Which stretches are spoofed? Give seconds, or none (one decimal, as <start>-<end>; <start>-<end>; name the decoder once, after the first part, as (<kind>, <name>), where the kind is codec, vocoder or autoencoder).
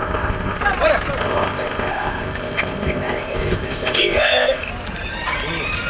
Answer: 0.0-0.6 (codec, ZipCodec); 1.2-4.7